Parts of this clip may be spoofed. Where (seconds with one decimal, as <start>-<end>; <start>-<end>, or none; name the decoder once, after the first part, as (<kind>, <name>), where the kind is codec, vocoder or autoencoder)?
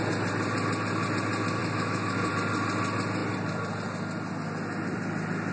1.6-2.3 (autoencoder, DAC-VAE)